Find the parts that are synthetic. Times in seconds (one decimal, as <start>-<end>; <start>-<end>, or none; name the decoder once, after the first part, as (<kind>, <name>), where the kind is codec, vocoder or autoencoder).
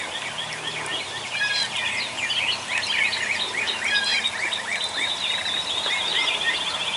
0.9-1.8 (vocoder, BigVGAN v2); 6.1-7.0